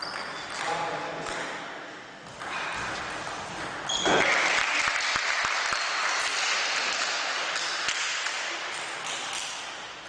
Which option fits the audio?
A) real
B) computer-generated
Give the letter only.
A